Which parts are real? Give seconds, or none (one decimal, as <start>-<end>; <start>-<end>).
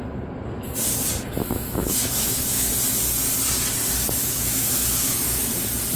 0.0-1.4; 2.7-4.2; 5.4-6.0